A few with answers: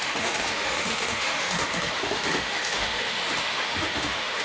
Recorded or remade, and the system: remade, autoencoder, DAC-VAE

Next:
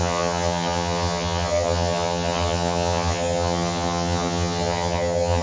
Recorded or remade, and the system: remade, vocoder, HiFi-GAN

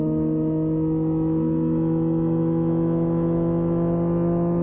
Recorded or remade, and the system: recorded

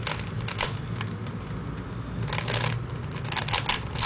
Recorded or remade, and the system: recorded